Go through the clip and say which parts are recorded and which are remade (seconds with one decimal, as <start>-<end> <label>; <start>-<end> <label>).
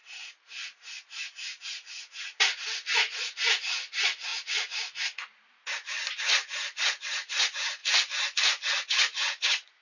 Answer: 0.0-1.6 recorded; 1.6-7.8 remade; 7.8-8.4 recorded; 8.4-9.8 remade